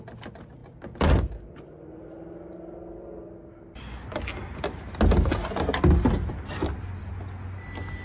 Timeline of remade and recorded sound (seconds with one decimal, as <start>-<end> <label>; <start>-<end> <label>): 0.0-8.0 recorded